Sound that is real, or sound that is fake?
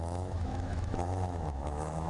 fake